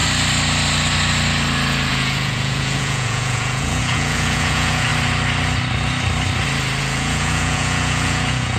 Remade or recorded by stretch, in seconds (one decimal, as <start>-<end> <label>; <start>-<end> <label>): 0.0-1.9 recorded; 1.9-4.9 remade; 4.9-6.8 recorded; 6.8-8.6 remade